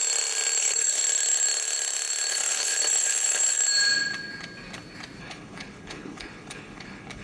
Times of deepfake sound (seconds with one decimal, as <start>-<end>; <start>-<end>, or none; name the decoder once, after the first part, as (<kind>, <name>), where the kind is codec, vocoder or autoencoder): 0.6-1.0 (codec, HILCodec); 2.3-3.6; 5.2-7.2